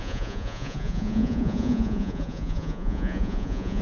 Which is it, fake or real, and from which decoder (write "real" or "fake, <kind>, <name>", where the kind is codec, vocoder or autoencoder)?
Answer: fake, vocoder, Vocos